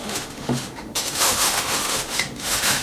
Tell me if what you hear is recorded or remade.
remade